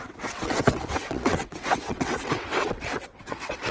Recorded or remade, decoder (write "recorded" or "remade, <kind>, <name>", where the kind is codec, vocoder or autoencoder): remade, vocoder, WaveNeXt